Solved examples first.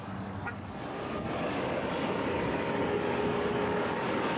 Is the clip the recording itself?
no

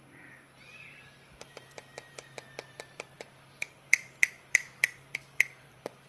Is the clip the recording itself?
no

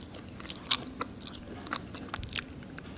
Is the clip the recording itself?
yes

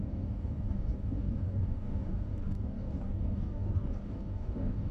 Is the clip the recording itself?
no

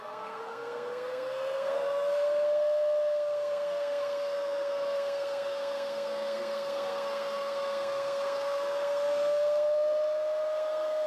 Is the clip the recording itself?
no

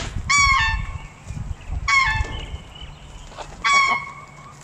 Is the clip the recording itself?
yes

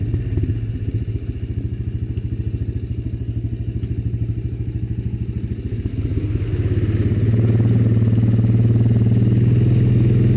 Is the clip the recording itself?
yes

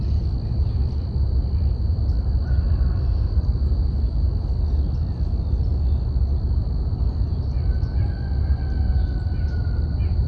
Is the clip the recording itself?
yes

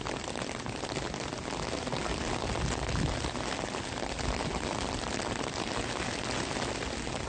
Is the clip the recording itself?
yes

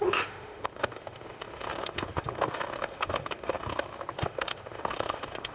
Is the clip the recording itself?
no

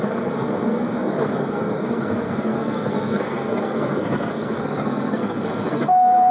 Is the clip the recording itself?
no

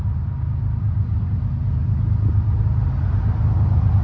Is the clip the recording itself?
yes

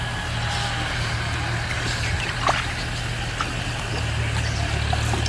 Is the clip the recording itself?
yes